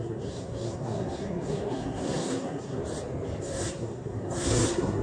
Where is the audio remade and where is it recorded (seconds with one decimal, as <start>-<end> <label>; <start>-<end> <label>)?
0.0-2.8 remade; 2.8-3.4 recorded; 3.4-5.0 remade